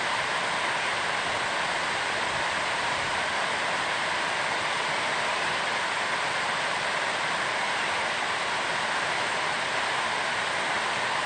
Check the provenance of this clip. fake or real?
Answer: real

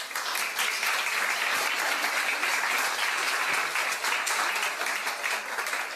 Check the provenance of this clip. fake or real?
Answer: real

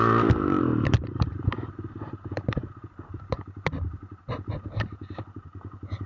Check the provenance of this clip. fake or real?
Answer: fake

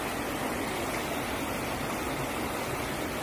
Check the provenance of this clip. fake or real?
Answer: real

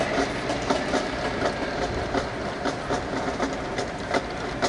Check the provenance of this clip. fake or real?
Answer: real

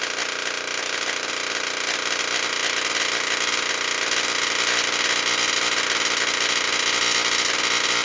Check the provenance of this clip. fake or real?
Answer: real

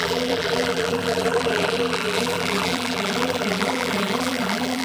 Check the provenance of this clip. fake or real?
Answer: fake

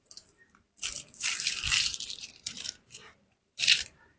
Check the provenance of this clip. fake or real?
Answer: fake